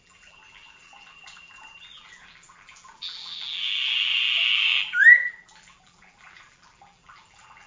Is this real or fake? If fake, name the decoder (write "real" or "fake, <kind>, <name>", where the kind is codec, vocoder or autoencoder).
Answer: fake, vocoder, BigVGAN v2